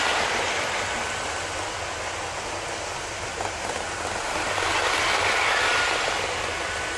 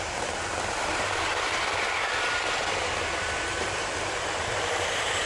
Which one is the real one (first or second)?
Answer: first